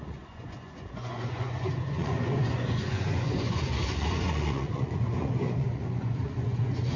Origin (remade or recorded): remade